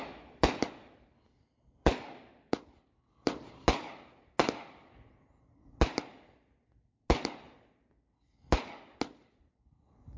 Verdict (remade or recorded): recorded